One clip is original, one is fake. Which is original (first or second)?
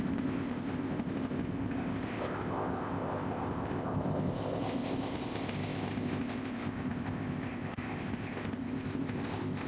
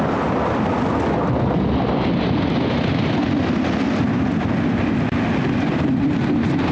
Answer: second